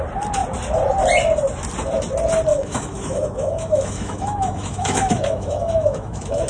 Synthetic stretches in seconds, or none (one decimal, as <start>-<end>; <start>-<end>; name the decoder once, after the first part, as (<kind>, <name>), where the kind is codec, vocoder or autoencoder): 2.5-6.5 (autoencoder, DAC-VAE)